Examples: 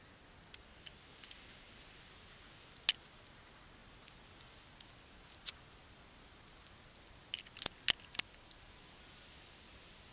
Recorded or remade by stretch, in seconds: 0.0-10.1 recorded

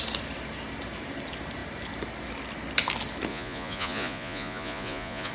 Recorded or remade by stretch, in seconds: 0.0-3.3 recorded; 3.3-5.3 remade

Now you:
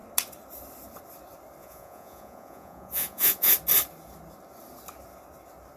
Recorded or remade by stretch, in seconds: 0.0-1.6 recorded; 1.6-3.5 remade; 3.5-5.8 recorded

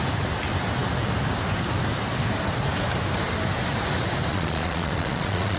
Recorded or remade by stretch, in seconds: 0.0-4.3 recorded; 4.3-5.6 remade

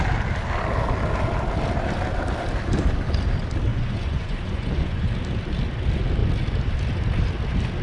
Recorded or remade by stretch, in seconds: 0.0-3.7 recorded; 3.7-5.1 remade; 5.1-7.8 recorded